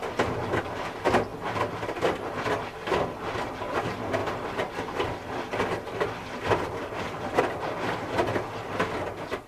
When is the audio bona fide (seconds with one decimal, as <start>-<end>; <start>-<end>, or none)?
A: 0.0-9.5